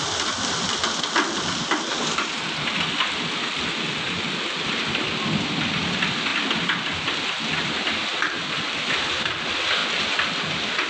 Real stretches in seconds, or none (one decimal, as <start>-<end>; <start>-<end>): 0.0-1.9; 4.8-9.8